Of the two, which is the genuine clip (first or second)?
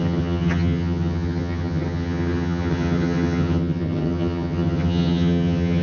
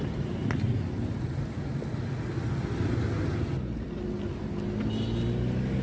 second